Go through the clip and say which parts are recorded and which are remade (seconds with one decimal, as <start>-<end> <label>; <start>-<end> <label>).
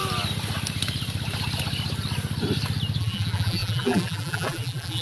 0.0-3.0 recorded; 3.0-5.0 remade